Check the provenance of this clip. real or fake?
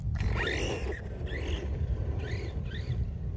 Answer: real